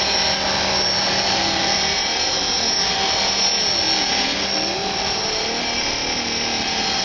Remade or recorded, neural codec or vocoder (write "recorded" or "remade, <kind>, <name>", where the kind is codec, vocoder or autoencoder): recorded